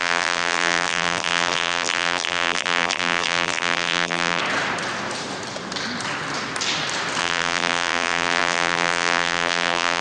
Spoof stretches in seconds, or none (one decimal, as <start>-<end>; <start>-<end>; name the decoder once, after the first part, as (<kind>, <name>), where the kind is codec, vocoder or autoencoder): 0.0-4.4 (vocoder, BigVGAN v2); 7.2-10.0